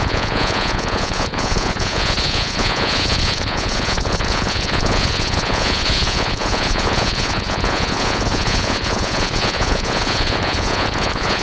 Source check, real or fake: fake